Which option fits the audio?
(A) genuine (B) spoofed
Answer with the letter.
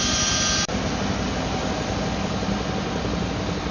A